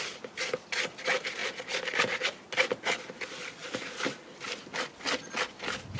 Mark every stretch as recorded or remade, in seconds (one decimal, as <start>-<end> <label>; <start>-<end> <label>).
0.0-6.0 recorded